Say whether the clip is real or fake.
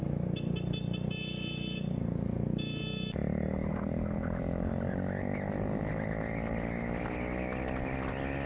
real